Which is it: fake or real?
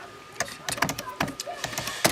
real